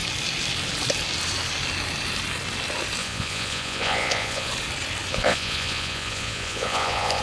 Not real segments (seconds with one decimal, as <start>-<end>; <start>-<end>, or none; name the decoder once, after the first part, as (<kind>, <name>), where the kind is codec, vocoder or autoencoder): 3.0-4.5 (vocoder, Vocos); 5.1-7.2